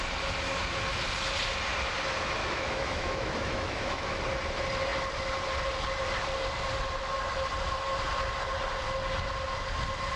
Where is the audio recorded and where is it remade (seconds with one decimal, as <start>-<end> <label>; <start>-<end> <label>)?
0.0-2.4 recorded; 2.4-4.2 remade; 4.2-10.2 recorded